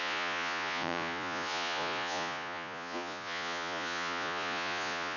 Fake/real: fake